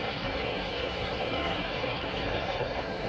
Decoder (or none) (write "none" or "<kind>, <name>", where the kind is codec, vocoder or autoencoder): codec, SNAC